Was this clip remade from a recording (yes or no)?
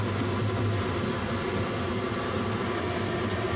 no